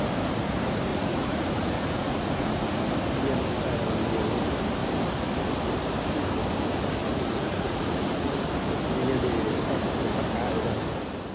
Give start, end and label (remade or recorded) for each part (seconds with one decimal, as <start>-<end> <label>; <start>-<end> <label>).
0.0-0.9 recorded; 0.9-2.8 remade; 2.8-7.0 recorded; 7.0-8.4 remade; 8.4-11.3 recorded